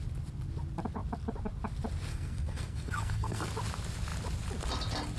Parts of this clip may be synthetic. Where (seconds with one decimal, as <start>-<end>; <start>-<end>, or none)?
2.1-3.5